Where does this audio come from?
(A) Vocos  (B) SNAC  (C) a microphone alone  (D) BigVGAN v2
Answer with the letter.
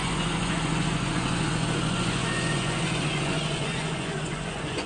A